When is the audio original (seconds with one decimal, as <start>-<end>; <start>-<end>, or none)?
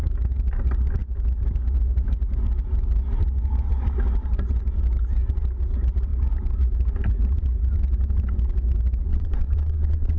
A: 0.0-9.1